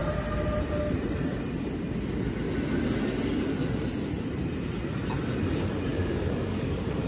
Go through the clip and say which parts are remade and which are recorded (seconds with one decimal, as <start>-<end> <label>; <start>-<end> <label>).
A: 0.0-5.9 recorded; 5.9-7.1 remade